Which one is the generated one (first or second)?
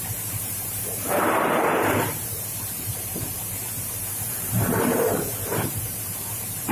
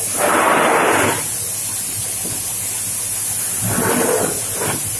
first